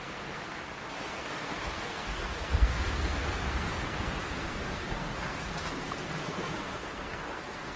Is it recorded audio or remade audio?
remade